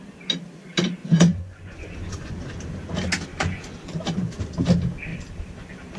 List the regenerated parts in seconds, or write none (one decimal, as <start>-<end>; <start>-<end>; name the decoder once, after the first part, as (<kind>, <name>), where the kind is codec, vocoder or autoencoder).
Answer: 1.0-2.6 (vocoder, Vocos); 3.3-4.3